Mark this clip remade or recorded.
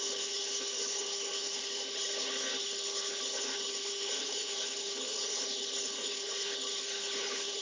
remade